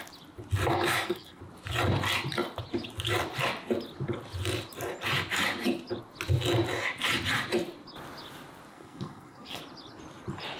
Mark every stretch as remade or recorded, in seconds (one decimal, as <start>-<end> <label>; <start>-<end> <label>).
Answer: 0.0-0.7 recorded; 0.7-1.4 remade; 1.4-8.7 recorded; 8.7-9.6 remade; 9.6-10.6 recorded